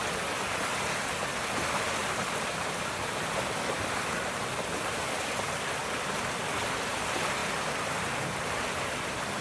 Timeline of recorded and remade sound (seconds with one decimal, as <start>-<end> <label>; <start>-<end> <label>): 0.0-0.6 remade; 0.6-2.0 recorded; 2.0-6.9 remade; 6.9-7.4 recorded; 7.4-9.4 remade